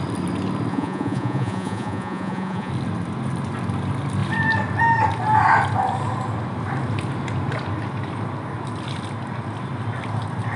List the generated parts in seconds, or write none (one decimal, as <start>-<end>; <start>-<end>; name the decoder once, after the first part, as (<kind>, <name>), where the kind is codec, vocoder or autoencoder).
0.7-2.7 (vocoder, Vocos)